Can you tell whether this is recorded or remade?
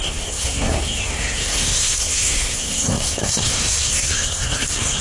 remade